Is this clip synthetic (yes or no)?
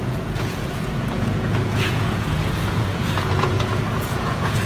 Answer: yes